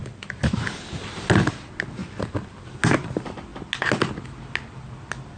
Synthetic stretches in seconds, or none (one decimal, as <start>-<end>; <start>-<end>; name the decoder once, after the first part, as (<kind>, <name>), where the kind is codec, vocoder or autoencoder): 0.0-0.6 (vocoder, BigVGAN v2)